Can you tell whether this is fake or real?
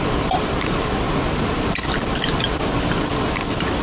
fake